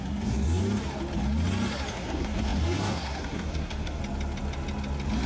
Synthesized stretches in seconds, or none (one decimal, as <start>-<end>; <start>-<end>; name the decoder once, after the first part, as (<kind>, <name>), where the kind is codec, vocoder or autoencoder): 0.0-0.6 (codec, SNAC); 1.9-4.0

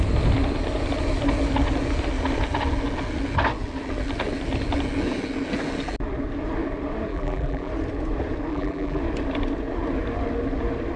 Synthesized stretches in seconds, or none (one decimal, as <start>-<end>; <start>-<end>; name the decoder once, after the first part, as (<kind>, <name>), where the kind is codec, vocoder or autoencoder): 7.1-7.7 (vocoder, BigVGAN v2); 8.5-9.0

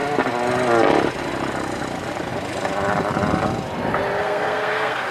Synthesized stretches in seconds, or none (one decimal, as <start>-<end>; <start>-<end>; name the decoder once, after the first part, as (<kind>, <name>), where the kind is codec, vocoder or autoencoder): 4.2-5.1 (codec, SNAC)

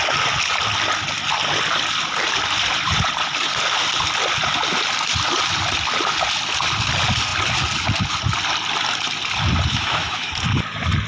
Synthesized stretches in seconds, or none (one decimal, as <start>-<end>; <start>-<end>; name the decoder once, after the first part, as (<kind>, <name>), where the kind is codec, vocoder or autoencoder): 9.7-10.3 (autoencoder, DAC-VAE)

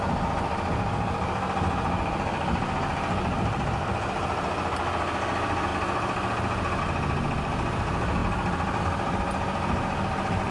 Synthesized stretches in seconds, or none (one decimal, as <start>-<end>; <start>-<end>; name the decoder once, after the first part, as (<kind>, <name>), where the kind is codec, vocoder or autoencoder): none

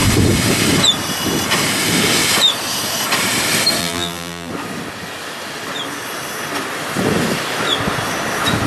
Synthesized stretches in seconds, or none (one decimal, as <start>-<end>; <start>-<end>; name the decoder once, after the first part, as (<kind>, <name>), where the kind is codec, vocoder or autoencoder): 3.8-4.5 (vocoder, BigVGAN v2)